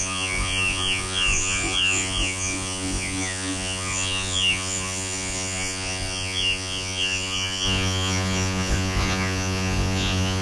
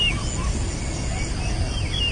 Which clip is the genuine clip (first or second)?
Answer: second